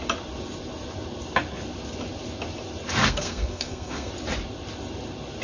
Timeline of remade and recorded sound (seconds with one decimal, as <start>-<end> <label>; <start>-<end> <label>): 0.0-3.0 recorded; 3.0-4.1 remade; 4.1-5.4 recorded

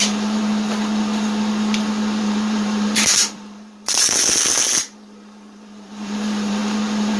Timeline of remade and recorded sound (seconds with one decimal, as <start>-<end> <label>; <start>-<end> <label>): 0.0-0.4 remade; 0.4-2.2 recorded; 2.2-7.2 remade

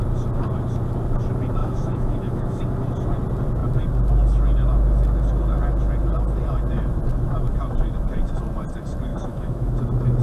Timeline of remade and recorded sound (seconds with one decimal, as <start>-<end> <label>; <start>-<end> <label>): 0.0-1.6 recorded; 1.6-2.6 remade; 2.6-9.1 recorded; 9.1-9.7 remade; 9.7-10.2 recorded

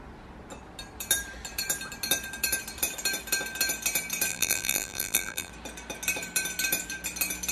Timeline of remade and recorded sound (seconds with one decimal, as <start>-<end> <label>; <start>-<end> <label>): 0.0-4.3 recorded; 4.3-5.5 remade; 5.5-7.5 recorded

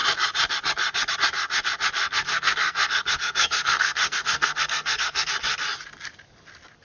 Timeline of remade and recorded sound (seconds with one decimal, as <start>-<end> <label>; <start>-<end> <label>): 0.0-2.0 recorded; 2.0-5.3 remade; 5.3-6.8 recorded